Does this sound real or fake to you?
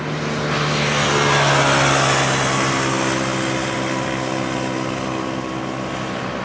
real